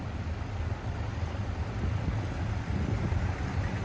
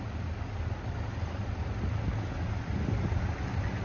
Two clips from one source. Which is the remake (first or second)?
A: first